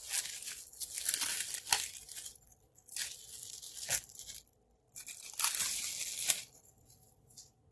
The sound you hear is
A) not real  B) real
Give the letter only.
B